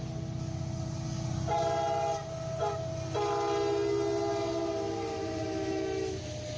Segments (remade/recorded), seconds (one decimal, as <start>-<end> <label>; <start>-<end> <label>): 0.0-6.6 recorded